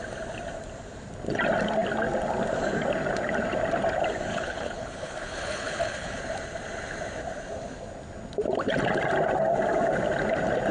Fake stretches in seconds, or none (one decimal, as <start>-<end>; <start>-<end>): 4.3-6.2